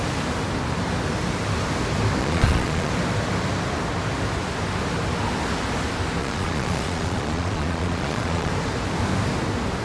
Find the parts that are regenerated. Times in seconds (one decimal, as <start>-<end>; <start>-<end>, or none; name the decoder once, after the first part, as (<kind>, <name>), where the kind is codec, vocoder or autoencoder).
2.2-2.9 (vocoder, Vocos); 6.2-8.5